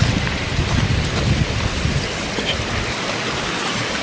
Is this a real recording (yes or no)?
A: yes